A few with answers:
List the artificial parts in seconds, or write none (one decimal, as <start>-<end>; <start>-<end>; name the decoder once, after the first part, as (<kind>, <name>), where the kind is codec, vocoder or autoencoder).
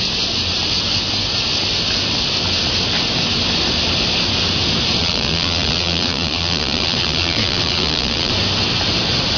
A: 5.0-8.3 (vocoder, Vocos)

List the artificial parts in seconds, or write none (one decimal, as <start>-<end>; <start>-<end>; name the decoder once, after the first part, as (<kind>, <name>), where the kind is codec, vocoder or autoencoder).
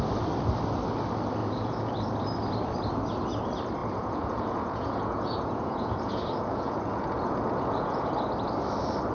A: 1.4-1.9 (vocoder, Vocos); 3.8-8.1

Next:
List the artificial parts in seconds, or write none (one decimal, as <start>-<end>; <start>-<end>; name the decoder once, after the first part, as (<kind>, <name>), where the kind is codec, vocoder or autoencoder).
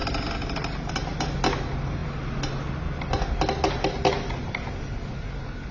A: none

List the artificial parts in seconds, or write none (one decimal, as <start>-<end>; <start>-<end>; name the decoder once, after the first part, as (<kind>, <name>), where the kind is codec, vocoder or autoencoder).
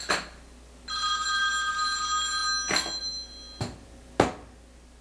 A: none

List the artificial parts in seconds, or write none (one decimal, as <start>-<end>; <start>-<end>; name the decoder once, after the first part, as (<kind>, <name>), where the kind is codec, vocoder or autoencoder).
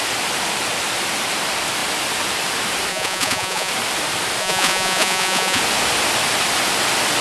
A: 2.9-3.7 (vocoder, Vocos); 4.4-5.6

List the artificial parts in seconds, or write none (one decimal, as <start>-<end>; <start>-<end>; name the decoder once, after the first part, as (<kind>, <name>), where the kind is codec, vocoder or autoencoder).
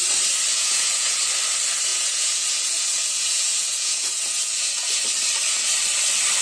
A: 0.5-1.2 (vocoder, Vocos); 1.9-5.0